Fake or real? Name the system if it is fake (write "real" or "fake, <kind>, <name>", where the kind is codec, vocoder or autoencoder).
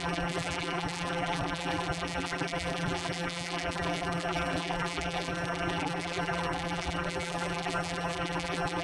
fake, vocoder, BigVGAN v2